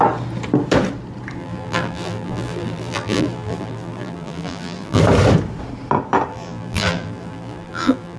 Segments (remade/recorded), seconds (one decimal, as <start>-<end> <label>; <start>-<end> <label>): 0.0-1.4 recorded; 1.4-5.0 remade; 5.0-6.3 recorded; 6.3-8.2 remade